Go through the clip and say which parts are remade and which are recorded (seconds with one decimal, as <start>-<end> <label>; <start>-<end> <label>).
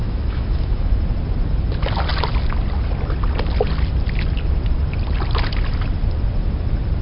0.0-0.9 remade; 0.9-7.0 recorded